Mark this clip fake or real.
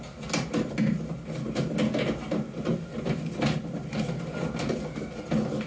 real